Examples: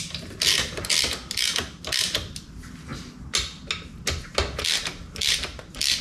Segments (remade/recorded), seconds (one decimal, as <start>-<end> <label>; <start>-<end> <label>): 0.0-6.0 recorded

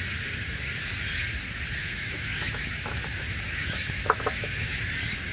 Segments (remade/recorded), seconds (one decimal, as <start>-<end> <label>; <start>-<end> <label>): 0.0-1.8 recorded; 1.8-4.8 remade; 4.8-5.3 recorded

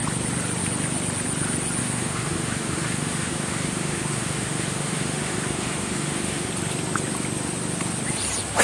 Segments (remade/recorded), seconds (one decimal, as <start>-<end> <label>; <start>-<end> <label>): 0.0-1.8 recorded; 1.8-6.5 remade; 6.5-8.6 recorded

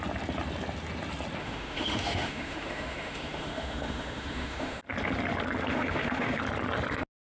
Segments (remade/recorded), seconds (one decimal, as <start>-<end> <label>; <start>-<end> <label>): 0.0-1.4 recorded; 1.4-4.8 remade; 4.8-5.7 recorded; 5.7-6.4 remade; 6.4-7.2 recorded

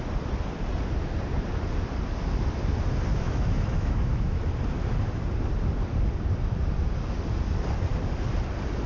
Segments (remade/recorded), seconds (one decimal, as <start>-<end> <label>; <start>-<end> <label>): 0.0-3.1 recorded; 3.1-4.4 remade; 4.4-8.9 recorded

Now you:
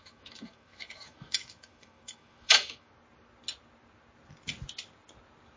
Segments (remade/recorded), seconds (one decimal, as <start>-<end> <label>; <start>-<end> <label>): 0.0-2.9 remade; 2.9-5.6 recorded

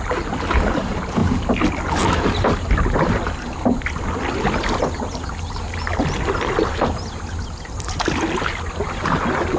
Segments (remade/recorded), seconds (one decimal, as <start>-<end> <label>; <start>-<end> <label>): 0.0-9.6 recorded

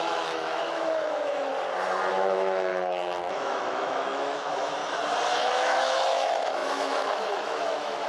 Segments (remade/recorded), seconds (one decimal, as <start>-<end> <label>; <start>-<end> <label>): 0.0-1.5 remade; 1.5-2.1 recorded; 2.1-2.7 remade; 2.7-3.3 recorded; 3.3-4.8 remade; 4.8-5.4 recorded; 5.4-8.1 remade